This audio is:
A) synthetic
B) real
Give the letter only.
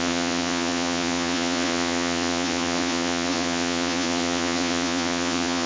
A